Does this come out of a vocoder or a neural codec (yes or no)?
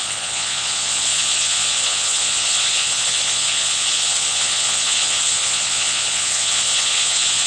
yes